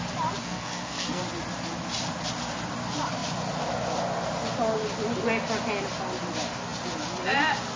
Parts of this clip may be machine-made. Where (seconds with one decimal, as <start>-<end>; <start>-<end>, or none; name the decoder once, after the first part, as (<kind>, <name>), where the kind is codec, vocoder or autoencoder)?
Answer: 0.4-1.2 (codec, SNAC)